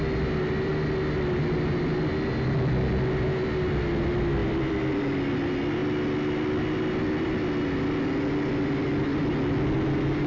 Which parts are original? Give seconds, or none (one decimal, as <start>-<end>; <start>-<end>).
0.0-4.4; 5.0-8.5; 9.2-10.3